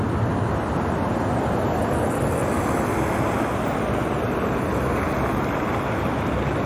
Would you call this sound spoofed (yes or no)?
no